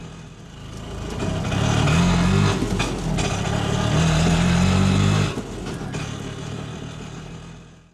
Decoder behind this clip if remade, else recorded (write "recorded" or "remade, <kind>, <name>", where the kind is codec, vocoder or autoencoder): recorded